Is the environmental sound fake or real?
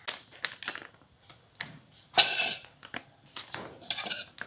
real